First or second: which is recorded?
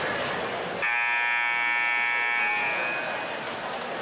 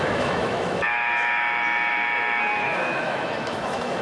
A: first